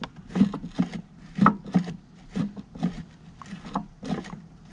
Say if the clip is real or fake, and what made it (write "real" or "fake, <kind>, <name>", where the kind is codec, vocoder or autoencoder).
real